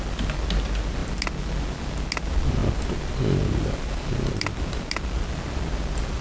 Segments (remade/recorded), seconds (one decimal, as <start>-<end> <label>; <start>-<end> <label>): 0.0-6.2 recorded